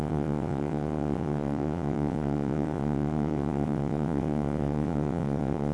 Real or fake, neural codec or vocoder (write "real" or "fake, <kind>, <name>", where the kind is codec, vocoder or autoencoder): fake, vocoder, WaveNeXt